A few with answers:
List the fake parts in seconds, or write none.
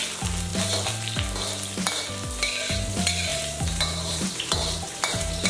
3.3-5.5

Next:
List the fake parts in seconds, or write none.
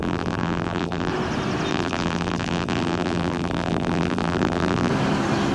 0.0-1.1; 1.7-4.9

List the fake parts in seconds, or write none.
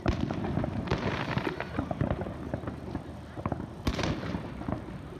none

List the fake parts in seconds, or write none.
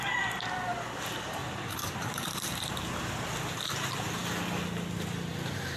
1.4-2.8